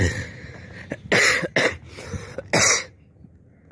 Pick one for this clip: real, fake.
real